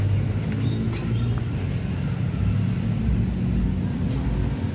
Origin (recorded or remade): recorded